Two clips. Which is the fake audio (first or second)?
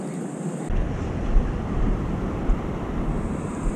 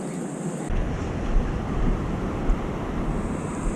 first